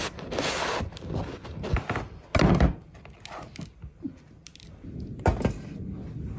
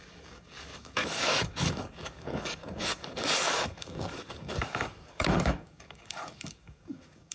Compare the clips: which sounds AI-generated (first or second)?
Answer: second